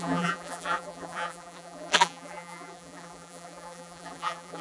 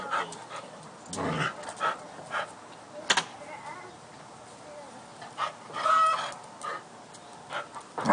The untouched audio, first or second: second